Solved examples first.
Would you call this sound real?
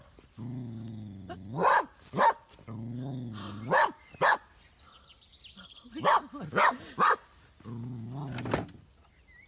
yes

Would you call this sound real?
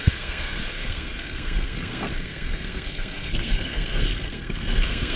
no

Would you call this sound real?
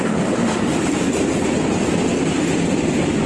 yes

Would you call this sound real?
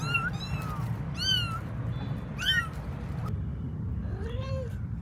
yes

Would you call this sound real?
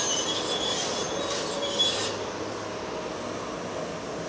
yes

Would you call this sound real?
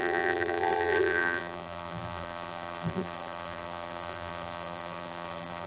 no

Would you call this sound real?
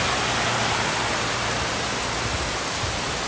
yes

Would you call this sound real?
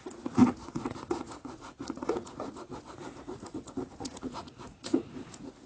no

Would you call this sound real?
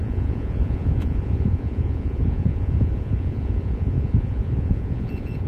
no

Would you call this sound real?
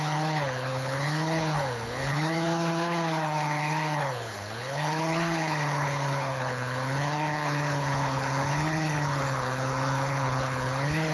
no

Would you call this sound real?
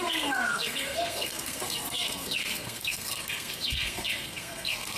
no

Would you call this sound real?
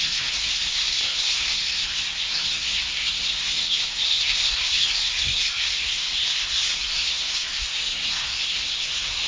no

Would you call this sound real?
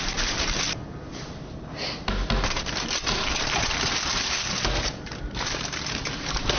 yes